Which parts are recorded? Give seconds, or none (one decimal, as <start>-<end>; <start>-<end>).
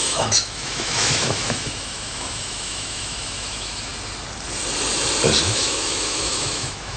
3.9-5.4